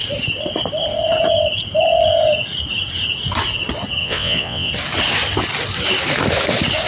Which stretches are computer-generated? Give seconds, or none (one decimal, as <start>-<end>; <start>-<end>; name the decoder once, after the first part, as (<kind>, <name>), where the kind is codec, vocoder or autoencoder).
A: 4.0-4.7 (vocoder, WaveNeXt)